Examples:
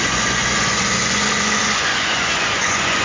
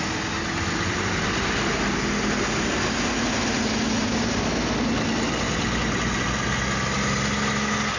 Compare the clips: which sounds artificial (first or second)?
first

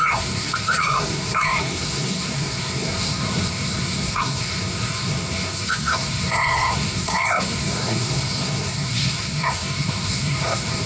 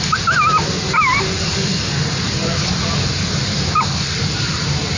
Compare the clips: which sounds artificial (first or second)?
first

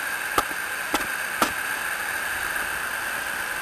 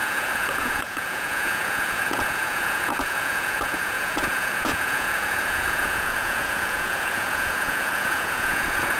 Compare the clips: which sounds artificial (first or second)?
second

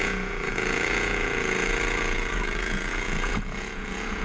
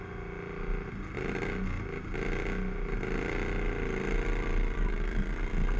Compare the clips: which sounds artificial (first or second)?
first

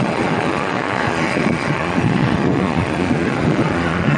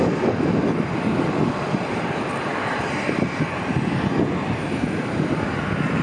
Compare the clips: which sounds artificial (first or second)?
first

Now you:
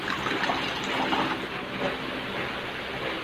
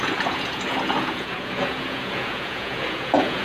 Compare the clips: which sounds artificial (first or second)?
second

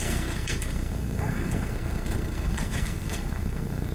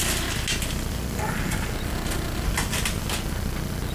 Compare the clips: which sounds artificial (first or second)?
first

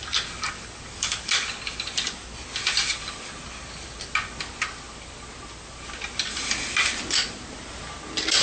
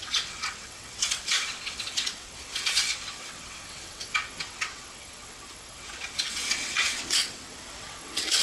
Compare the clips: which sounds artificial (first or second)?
second